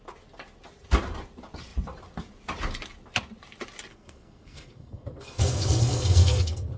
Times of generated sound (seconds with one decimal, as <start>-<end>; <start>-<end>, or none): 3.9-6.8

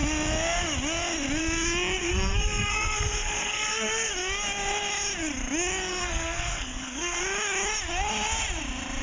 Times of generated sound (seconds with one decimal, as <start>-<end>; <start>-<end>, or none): 2.0-4.1; 5.9-7.2

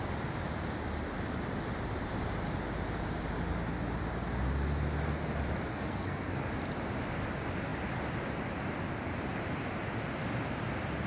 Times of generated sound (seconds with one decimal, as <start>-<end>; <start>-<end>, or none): 5.7-6.5

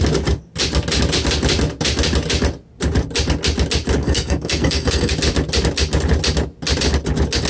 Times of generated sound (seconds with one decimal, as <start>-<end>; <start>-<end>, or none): 4.0-5.1